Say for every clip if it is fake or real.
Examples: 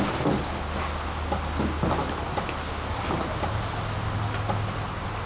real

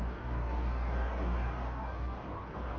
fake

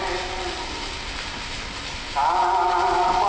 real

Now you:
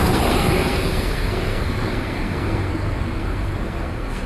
fake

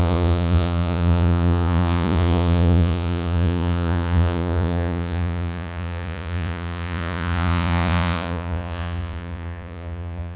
fake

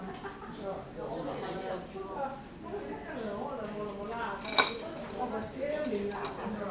real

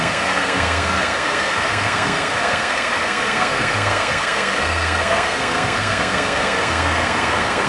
fake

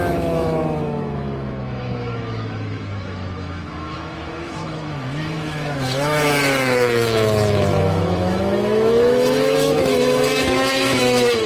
fake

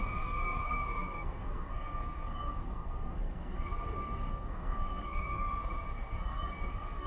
fake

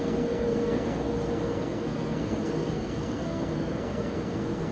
fake